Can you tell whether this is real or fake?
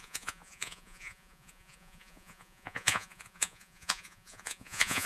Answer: fake